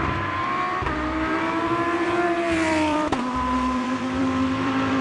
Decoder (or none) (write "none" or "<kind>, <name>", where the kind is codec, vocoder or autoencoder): vocoder, BigVGAN v2